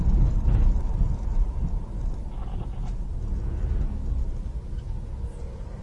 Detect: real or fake real